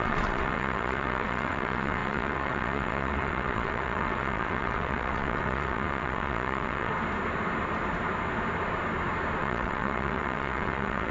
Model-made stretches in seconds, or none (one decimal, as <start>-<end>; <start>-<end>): 0.0-6.9; 9.4-11.1